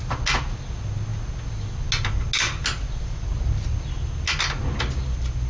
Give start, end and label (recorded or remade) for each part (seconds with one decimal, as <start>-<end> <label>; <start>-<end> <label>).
0.0-5.5 recorded

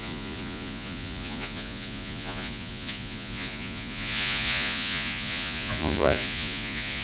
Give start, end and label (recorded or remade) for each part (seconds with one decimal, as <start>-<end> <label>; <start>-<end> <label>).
0.0-7.0 remade